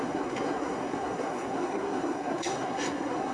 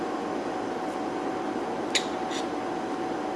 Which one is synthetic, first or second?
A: first